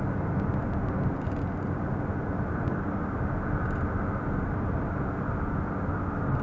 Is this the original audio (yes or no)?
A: yes